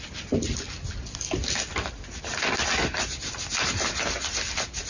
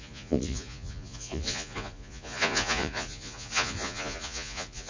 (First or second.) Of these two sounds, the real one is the first